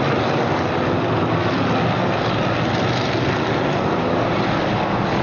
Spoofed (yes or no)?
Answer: no